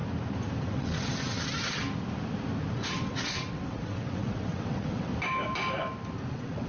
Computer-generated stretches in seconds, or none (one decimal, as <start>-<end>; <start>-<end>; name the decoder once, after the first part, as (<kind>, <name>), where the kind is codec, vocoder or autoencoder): 0.6-1.8 (vocoder, WaveNeXt); 2.7-5.1; 6.3-6.7